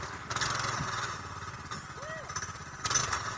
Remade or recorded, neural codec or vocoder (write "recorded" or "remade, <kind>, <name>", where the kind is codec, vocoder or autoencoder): recorded